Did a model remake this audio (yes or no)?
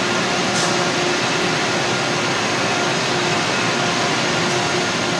no